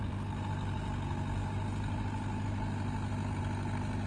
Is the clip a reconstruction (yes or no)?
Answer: no